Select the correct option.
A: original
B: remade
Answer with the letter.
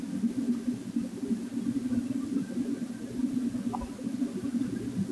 A